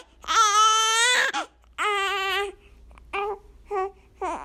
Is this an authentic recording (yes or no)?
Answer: yes